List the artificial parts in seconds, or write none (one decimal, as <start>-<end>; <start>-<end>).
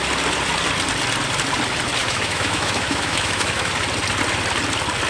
2.0-3.7